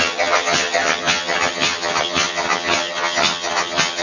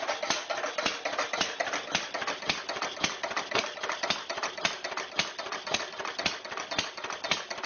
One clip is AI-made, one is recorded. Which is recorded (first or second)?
second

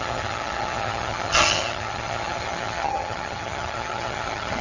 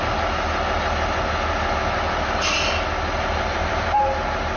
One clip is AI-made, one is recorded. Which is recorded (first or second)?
second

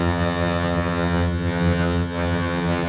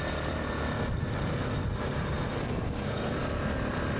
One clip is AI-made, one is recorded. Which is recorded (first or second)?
second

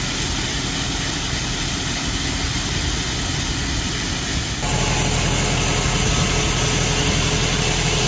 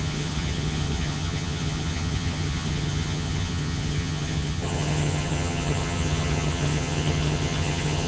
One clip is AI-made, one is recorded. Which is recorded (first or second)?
first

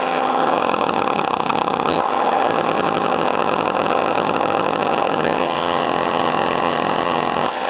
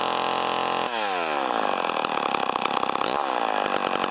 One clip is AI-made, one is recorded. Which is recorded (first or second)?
second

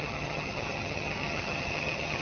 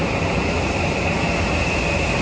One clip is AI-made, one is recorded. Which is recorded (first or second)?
second